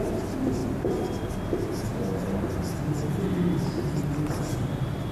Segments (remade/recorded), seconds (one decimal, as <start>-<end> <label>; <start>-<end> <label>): 0.0-5.1 recorded